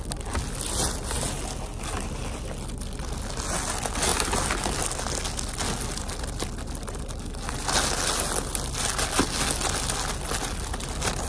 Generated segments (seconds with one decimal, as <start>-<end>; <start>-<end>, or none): none